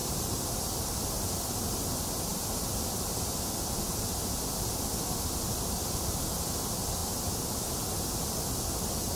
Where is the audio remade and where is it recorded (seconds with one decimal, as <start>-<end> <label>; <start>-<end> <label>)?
0.0-0.6 remade; 0.6-9.2 recorded